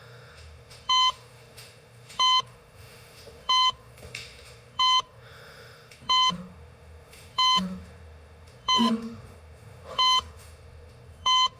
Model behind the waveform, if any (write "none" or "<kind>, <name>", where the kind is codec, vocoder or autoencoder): autoencoder, DAC-VAE